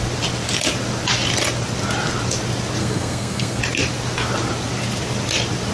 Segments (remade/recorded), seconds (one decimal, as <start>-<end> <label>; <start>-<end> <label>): 0.0-2.8 recorded; 2.8-3.6 remade; 3.6-5.7 recorded